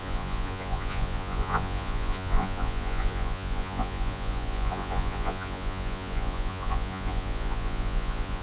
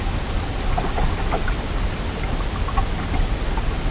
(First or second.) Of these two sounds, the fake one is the first